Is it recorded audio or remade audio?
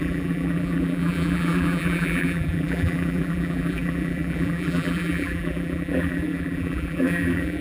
remade